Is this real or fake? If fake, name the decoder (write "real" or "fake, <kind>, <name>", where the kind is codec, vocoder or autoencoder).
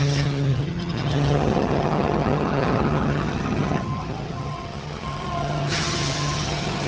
fake, vocoder, HiFi-GAN